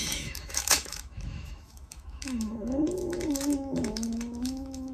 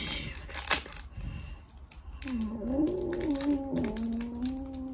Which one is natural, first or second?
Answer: second